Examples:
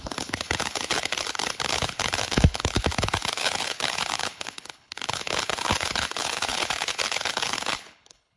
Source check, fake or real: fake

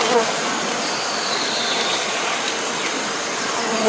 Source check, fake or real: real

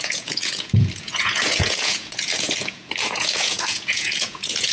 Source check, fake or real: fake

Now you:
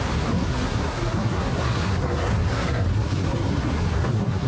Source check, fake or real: fake